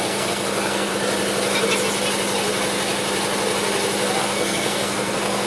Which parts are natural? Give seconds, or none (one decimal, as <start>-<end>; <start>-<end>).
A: 0.9-4.2